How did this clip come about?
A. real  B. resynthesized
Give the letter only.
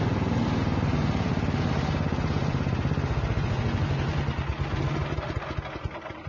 A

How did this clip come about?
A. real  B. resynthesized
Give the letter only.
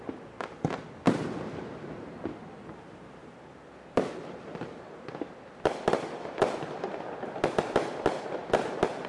A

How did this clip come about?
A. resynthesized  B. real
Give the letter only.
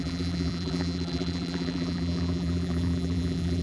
A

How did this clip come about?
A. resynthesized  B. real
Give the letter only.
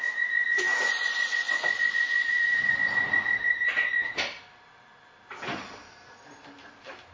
A